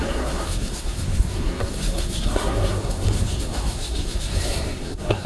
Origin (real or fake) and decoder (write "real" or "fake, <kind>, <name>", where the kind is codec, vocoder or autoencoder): fake, codec, SNAC